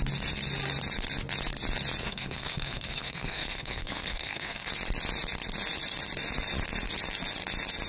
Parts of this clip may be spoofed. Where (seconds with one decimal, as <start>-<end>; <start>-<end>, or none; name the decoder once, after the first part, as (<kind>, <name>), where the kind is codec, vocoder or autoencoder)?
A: 2.0-4.7 (codec, SNAC)